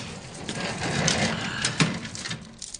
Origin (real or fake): fake